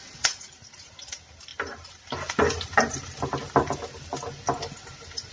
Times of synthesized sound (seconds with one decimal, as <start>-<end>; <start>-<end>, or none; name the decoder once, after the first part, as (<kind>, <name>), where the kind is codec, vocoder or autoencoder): 0.0-0.5 (vocoder, WaveNeXt)